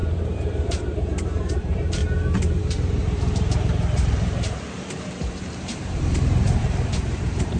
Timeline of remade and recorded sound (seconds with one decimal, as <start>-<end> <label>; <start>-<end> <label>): 0.0-2.0 remade; 2.0-2.5 recorded; 2.5-7.6 remade